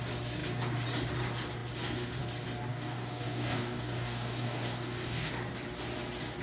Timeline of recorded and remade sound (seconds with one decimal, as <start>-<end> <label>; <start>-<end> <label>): 0.0-2.7 recorded; 2.7-5.3 remade; 5.3-6.4 recorded